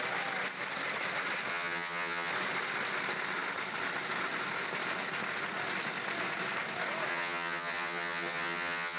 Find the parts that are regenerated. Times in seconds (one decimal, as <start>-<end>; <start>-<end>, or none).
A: 1.5-2.3; 7.1-9.0